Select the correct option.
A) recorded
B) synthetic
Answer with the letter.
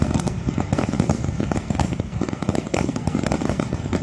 B